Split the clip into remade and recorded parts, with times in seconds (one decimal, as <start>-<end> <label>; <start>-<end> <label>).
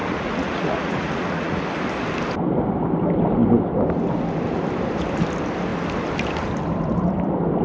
0.0-1.6 remade; 1.6-7.6 recorded